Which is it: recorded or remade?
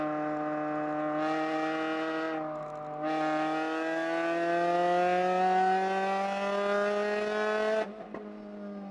recorded